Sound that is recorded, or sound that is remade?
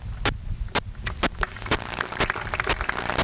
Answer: recorded